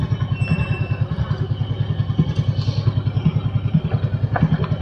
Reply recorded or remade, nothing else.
recorded